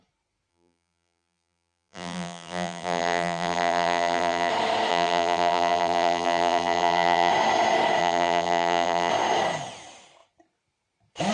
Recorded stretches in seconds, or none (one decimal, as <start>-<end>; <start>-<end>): 0.0-0.5; 4.5-4.9; 7.3-8.0; 9.1-11.3